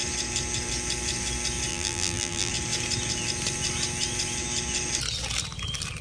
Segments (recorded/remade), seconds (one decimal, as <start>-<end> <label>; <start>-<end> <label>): 0.0-1.7 recorded; 1.7-2.5 remade; 2.5-6.0 recorded

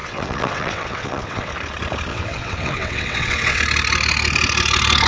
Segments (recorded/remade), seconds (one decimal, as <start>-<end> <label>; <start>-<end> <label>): 0.0-1.5 remade; 1.5-2.1 recorded; 2.1-3.6 remade; 3.6-5.1 recorded